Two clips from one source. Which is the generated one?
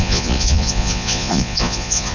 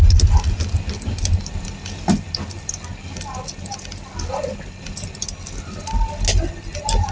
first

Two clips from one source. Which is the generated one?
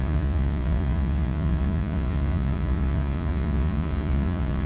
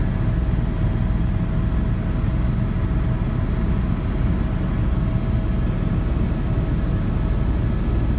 first